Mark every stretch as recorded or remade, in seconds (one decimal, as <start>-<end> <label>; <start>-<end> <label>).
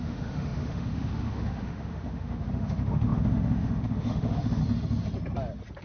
0.0-4.6 remade; 4.6-5.8 recorded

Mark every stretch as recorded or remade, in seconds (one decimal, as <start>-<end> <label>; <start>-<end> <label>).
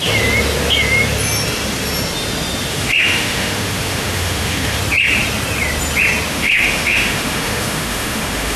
0.0-2.7 recorded; 2.7-4.8 remade; 4.8-6.3 recorded; 6.3-8.6 remade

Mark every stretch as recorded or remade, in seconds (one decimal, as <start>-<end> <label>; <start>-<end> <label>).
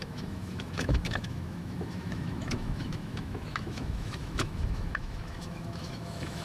0.0-6.4 remade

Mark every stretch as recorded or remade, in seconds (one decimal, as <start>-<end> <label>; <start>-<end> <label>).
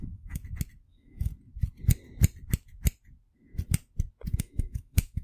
0.0-0.4 remade; 0.4-0.9 recorded; 0.9-1.3 remade; 1.3-4.4 recorded; 4.4-5.2 remade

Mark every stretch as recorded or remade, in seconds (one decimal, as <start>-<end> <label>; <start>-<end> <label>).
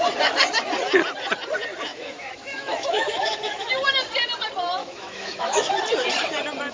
0.0-1.9 recorded; 1.9-3.7 remade; 3.7-4.8 recorded; 4.8-5.8 remade; 5.8-6.7 recorded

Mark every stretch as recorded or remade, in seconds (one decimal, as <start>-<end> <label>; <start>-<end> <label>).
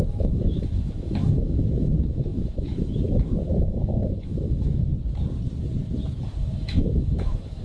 0.0-4.9 remade; 4.9-6.4 recorded; 6.4-7.6 remade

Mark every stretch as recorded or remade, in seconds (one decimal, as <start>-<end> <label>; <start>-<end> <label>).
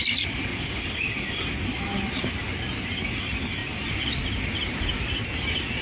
0.0-5.8 recorded